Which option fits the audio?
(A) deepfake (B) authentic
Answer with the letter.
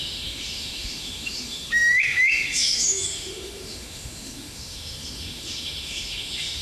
A